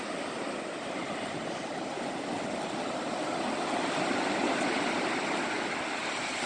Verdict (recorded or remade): recorded